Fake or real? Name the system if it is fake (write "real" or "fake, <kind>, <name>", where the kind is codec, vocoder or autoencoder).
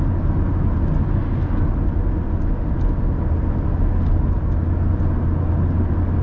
real